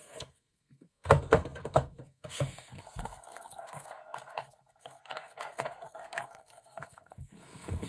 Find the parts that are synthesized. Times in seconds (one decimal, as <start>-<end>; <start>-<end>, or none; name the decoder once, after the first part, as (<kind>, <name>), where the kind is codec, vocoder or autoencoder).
0.0-7.9 (codec, SNAC)